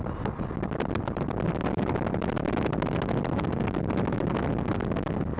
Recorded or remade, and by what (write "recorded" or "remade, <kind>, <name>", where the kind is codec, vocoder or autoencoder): recorded